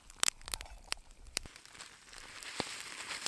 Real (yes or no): no